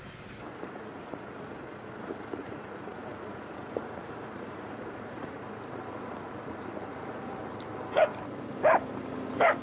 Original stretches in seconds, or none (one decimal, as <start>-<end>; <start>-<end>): 0.0-0.5; 5.4-5.9; 7.4-9.6

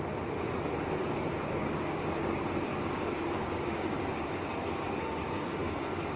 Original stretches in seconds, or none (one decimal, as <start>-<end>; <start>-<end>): 0.0-1.0; 2.1-2.7

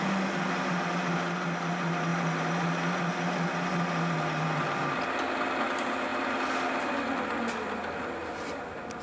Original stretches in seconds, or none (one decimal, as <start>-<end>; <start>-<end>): 0.0-9.0